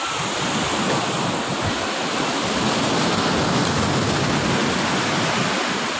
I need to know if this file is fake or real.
real